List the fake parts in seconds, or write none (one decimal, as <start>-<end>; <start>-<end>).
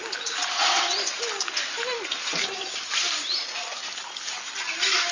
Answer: none